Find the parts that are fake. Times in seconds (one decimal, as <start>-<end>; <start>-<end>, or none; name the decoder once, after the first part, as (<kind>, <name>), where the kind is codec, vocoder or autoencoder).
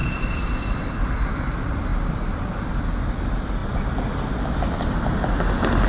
none